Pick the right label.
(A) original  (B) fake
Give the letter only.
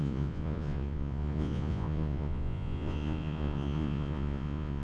B